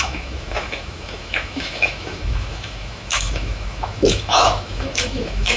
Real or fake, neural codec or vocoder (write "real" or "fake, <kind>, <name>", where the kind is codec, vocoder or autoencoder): fake, autoencoder, DAC-VAE